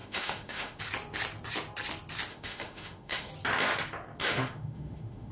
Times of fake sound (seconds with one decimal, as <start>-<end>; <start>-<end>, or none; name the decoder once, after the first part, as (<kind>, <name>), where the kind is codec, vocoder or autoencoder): 0.0-0.8 (autoencoder, DAC-VAE); 2.3-3.3; 4.2-5.3